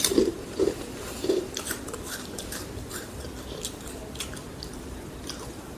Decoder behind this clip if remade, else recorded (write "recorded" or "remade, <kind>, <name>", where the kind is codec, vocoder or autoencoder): remade, vocoder, BigVGAN v2